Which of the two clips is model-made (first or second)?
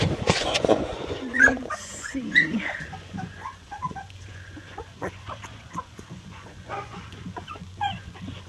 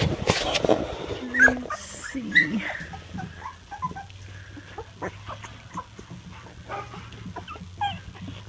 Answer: first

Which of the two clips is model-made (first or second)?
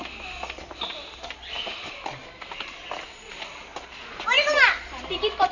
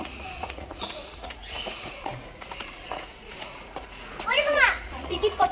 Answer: second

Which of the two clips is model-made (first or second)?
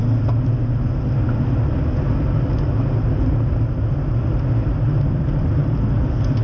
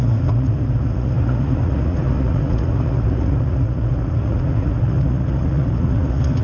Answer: second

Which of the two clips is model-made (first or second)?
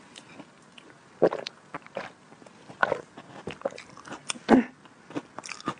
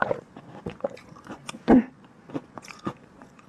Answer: second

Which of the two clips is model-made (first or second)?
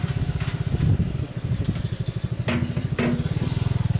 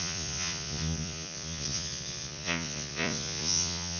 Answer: second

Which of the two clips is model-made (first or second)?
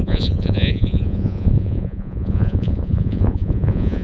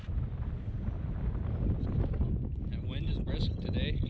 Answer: first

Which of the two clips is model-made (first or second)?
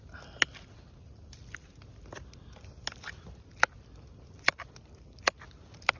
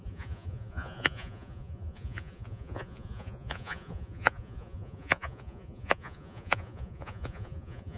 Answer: second